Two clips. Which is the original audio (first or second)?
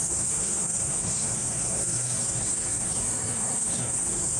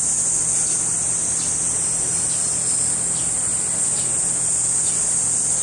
second